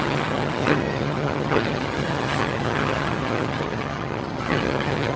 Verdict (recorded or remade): remade